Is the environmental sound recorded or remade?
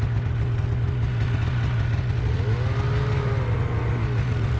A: recorded